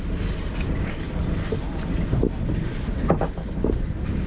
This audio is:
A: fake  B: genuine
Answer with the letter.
B